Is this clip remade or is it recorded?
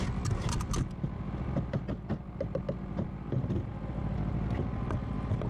recorded